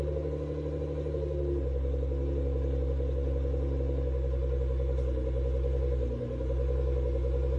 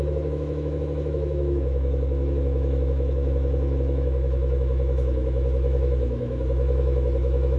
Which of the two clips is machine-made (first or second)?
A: second